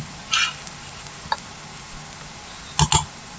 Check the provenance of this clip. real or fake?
real